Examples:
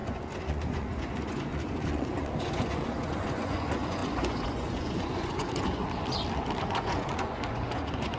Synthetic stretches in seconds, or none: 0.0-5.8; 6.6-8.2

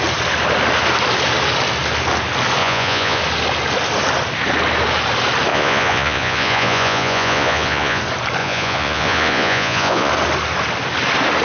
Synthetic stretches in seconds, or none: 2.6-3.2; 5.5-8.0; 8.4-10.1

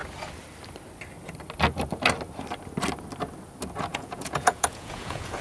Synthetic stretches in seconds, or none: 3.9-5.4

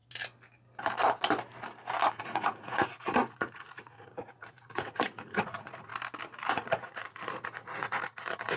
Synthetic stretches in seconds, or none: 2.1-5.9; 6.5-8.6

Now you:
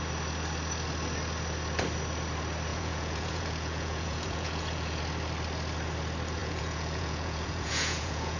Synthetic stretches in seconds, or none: 2.7-5.0; 6.4-8.4

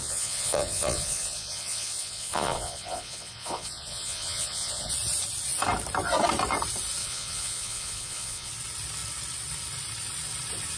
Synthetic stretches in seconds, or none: 0.0-4.9; 7.0-8.5

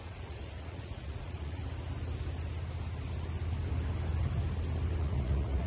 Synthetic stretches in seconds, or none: 0.0-1.6; 5.0-5.7

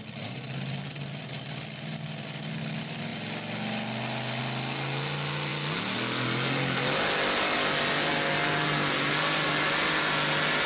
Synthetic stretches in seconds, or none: none